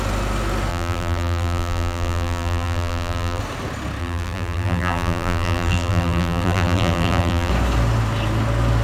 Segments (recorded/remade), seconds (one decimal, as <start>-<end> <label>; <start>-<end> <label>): 0.0-0.7 recorded; 0.7-3.4 remade; 3.4-4.0 recorded; 4.0-7.5 remade; 7.5-8.8 recorded

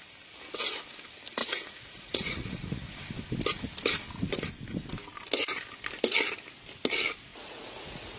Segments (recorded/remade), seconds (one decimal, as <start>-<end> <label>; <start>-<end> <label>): 0.0-1.4 recorded; 1.4-3.0 remade; 3.0-7.3 recorded; 7.3-8.2 remade

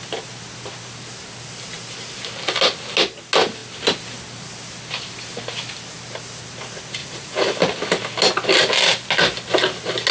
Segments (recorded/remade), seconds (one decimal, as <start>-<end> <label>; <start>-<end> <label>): 0.0-7.0 recorded; 7.0-7.5 remade; 7.5-10.1 recorded